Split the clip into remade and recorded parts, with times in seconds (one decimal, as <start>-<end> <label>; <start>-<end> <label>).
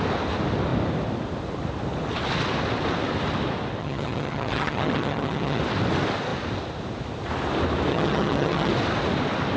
0.0-3.8 recorded; 3.8-5.6 remade; 5.6-7.9 recorded; 7.9-8.7 remade; 8.7-9.6 recorded